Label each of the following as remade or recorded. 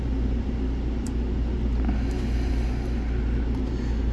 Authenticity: recorded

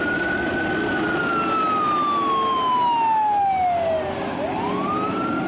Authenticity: recorded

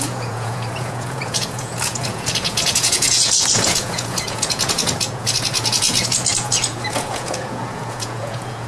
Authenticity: remade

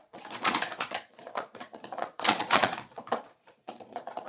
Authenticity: remade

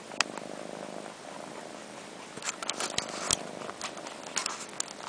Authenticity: recorded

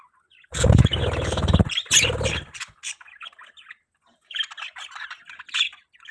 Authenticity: recorded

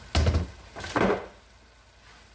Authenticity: recorded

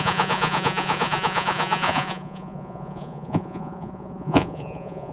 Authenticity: remade